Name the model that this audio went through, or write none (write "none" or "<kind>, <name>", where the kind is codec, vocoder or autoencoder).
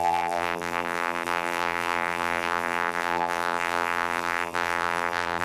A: vocoder, BigVGAN v2